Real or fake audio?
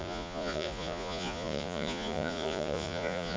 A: fake